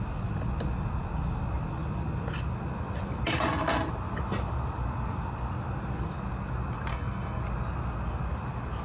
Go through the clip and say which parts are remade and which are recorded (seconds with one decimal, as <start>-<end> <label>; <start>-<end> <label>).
0.0-6.9 recorded; 6.9-7.4 remade; 7.4-8.8 recorded